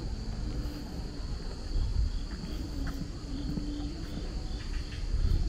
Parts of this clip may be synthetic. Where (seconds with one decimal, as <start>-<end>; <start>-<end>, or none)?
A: none